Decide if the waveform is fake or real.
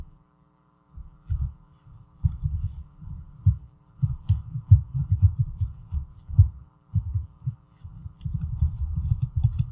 fake